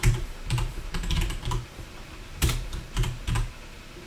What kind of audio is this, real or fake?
fake